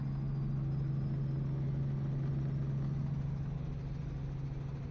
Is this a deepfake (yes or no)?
no